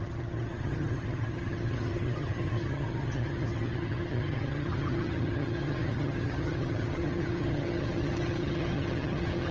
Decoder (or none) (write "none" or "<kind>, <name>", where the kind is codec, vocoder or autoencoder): vocoder, HiFi-GAN